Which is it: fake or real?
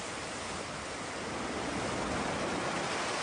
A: real